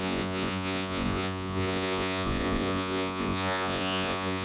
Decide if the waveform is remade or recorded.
remade